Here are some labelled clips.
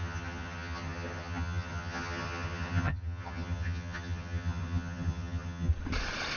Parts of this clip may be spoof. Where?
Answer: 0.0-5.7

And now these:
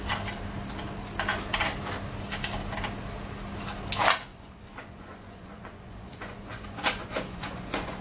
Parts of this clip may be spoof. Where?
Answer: 4.3-8.0

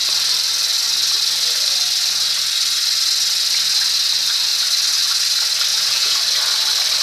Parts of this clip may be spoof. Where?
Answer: 5.7-6.2

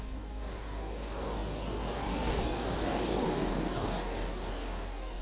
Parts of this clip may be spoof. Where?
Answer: 0.0-5.2

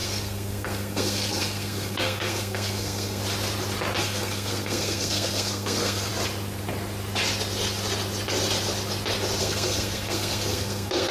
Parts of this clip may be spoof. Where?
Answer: 0.0-3.2; 4.0-6.1; 9.4-11.1

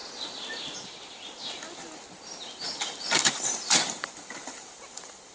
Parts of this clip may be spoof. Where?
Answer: 3.2-5.3